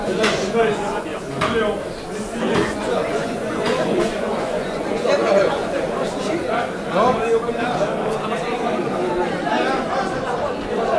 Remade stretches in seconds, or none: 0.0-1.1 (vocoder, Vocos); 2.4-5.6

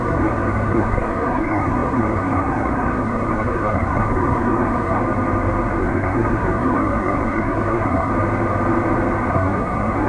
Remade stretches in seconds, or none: 0.0-5.0 (codec, SNAC); 5.8-8.1; 9.3-10.1

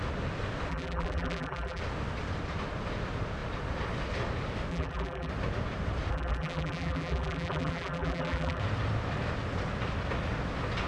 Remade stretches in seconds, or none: 0.7-1.8 (vocoder, BigVGAN v2); 4.7-5.3; 6.1-8.6

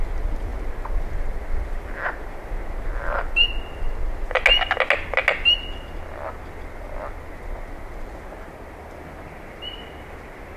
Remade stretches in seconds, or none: none

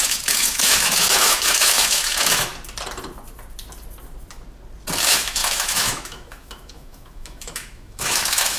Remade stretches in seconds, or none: 0.0-2.5 (autoencoder, DAC-VAE); 5.0-8.6

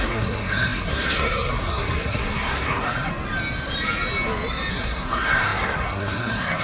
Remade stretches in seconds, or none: 0.0-3.1 (codec, SNAC); 4.7-6.6